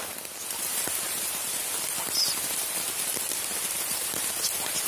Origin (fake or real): real